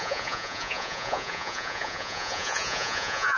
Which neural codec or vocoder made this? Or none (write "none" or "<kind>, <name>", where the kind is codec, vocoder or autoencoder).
vocoder, Vocos